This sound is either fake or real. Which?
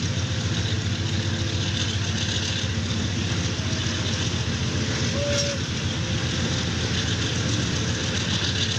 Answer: real